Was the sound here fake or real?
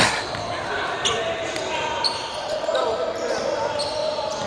real